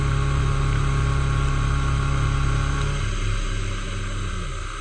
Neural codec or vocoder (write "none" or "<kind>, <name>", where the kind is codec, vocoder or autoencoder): none